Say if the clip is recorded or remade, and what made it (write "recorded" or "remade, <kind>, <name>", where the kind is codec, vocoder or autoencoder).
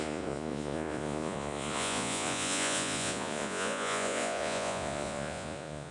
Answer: remade, vocoder, Vocos